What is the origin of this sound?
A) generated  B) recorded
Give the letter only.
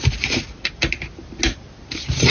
B